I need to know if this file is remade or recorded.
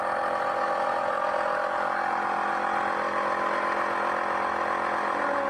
recorded